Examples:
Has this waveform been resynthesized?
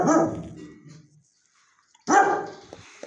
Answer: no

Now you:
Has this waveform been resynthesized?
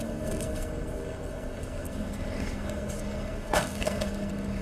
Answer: yes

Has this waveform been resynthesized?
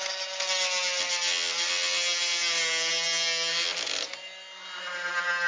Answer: no